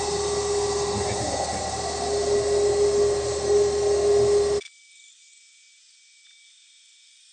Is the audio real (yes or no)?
yes